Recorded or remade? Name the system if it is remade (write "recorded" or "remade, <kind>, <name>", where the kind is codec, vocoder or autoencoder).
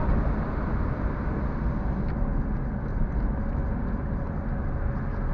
recorded